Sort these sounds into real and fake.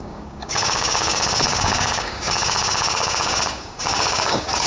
fake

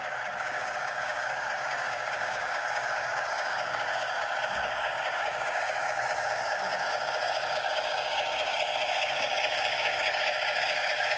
fake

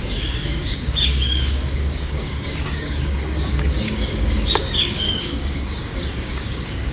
fake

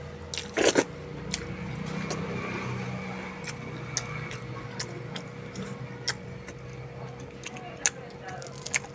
real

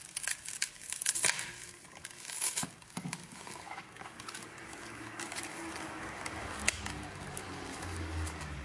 fake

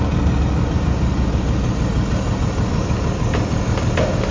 real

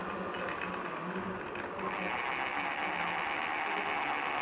real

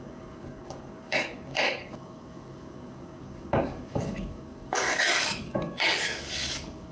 fake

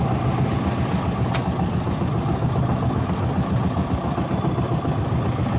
real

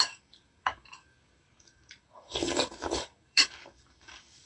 fake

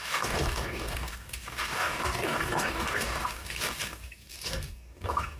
fake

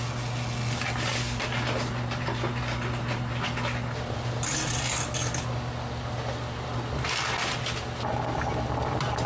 real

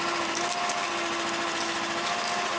real